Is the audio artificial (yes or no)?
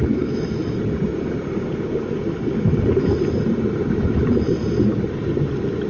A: no